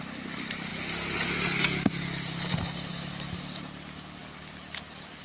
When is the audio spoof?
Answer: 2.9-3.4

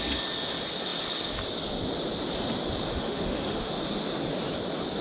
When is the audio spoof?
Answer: 2.9-3.7

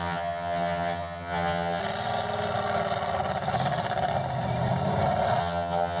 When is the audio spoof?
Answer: 0.0-1.8; 5.4-6.0

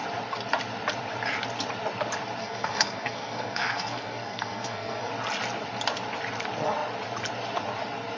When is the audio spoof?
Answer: 2.4-5.1

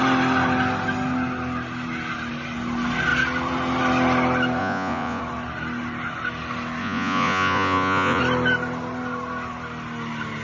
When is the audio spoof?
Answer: 4.6-5.2; 6.8-8.2